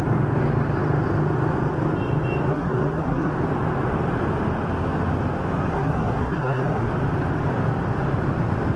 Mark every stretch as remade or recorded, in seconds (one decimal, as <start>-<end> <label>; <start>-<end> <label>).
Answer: 0.0-2.5 recorded; 2.5-3.3 remade; 3.3-5.7 recorded; 5.7-6.9 remade; 6.9-8.8 recorded